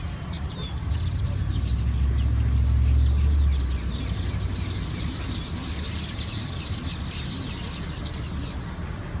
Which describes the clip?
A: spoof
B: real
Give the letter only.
B